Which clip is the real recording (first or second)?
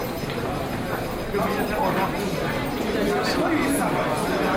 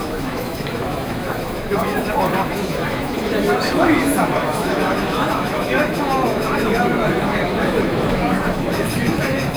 first